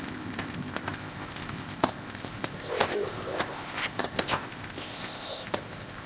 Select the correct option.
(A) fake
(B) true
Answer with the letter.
A